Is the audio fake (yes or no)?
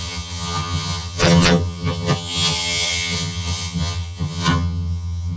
yes